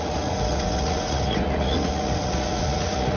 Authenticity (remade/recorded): remade